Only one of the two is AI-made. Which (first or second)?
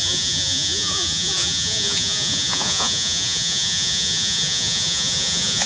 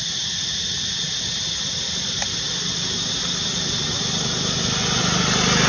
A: first